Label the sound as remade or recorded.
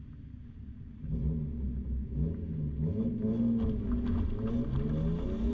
recorded